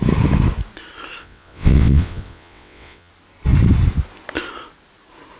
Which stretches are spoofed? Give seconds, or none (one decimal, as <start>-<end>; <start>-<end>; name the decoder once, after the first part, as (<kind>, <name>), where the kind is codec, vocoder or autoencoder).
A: 1.2-3.1 (vocoder, WaveNeXt)